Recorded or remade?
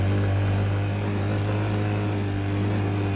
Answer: recorded